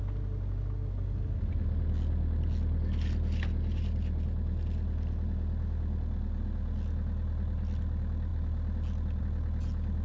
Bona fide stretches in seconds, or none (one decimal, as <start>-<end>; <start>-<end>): 0.0-10.0